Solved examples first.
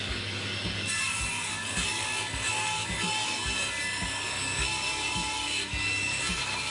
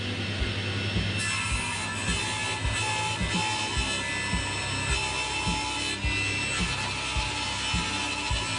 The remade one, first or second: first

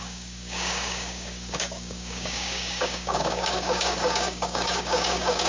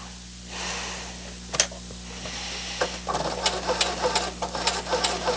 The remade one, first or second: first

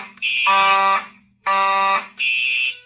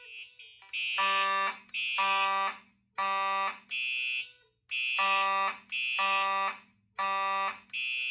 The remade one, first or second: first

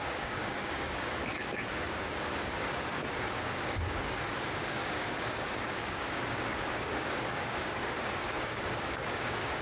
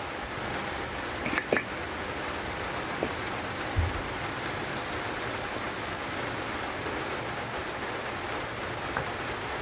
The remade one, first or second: first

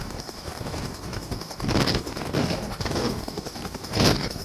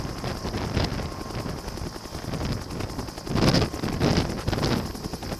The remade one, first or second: first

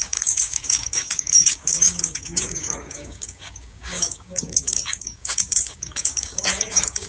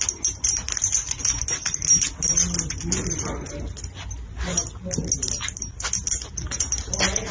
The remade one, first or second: first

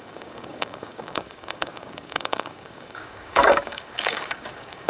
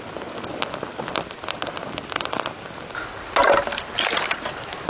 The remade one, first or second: first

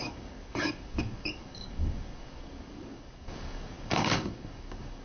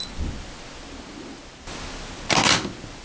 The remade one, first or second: first